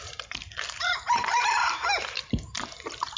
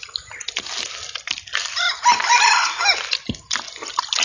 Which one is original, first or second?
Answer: second